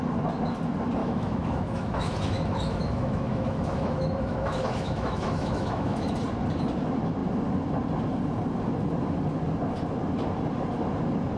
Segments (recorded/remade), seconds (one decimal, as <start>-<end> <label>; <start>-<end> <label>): 0.0-1.0 recorded; 1.0-6.1 remade; 6.1-11.4 recorded